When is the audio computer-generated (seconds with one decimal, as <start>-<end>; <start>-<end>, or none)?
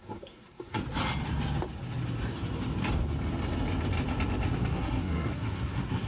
0.0-0.8; 4.5-6.1